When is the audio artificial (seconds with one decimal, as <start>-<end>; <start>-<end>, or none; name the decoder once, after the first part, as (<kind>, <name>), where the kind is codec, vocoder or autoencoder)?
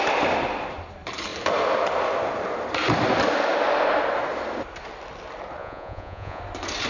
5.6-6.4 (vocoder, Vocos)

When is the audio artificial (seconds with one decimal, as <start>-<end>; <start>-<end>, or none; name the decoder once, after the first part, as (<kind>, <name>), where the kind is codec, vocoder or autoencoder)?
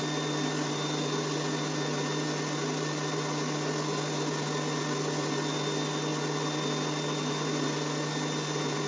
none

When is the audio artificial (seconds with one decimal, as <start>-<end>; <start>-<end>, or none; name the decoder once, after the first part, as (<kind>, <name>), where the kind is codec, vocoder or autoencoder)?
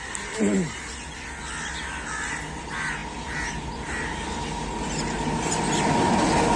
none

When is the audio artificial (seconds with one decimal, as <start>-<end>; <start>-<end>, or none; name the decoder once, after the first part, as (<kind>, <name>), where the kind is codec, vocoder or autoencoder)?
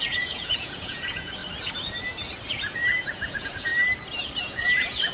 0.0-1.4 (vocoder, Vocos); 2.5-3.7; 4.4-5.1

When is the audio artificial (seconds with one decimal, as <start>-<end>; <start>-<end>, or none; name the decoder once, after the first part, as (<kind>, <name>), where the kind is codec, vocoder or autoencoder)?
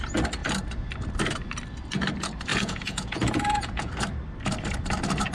2.5-3.9 (vocoder, Vocos)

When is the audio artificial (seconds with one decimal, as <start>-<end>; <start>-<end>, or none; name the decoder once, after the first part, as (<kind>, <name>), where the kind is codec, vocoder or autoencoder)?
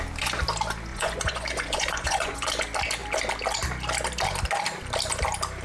0.9-2.5 (vocoder, Vocos)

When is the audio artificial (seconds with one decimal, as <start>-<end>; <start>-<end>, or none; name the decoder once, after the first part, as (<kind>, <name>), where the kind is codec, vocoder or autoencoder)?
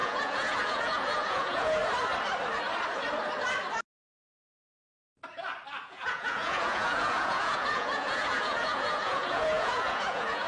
0.0-1.8 (vocoder, Vocos); 5.8-10.5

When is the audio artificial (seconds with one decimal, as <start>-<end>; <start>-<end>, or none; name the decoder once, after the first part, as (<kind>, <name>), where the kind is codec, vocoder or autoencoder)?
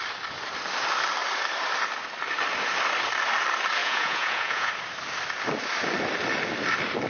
3.8-4.7 (vocoder, Vocos)